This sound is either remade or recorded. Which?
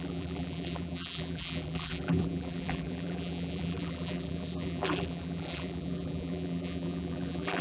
remade